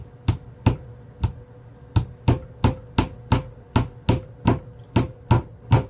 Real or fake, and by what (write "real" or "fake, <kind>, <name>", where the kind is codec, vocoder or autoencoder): real